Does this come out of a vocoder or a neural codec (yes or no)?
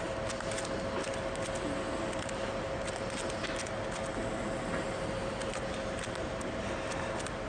no